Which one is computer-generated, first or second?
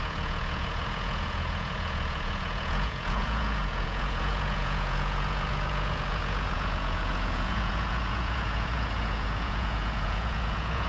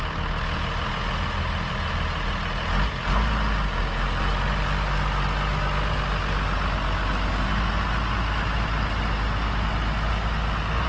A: first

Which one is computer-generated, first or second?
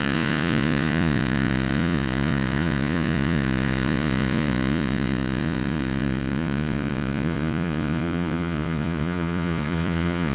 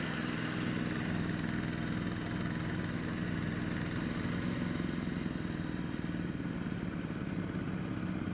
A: first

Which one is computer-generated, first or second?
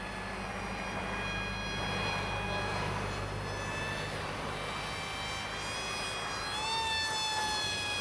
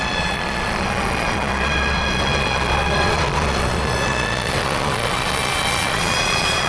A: second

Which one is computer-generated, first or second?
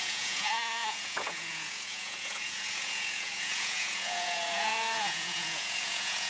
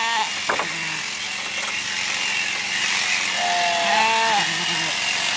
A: first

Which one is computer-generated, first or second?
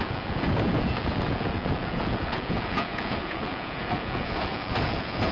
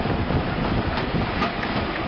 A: first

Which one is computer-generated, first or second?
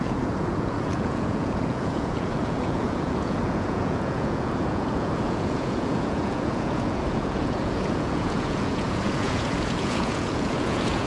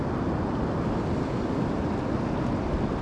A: first